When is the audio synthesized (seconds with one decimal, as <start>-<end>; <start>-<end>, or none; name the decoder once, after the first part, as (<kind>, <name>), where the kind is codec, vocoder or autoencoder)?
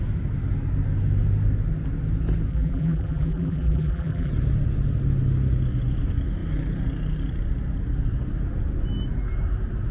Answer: 2.5-4.3 (vocoder, BigVGAN v2)